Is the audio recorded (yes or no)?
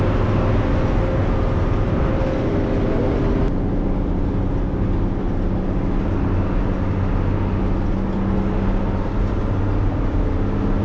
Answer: yes